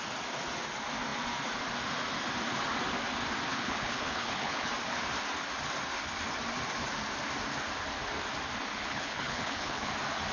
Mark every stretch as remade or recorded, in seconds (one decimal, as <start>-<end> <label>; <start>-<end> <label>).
0.0-3.5 recorded; 3.5-4.7 remade; 4.7-8.7 recorded; 8.7-9.9 remade; 9.9-10.3 recorded